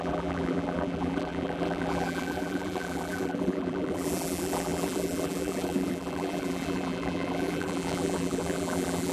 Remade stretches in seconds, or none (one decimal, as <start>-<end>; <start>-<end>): 0.0-9.1